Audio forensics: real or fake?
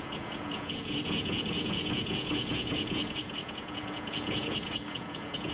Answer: fake